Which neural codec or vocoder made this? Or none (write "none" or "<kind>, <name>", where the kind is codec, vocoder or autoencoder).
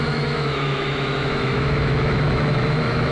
autoencoder, DAC-VAE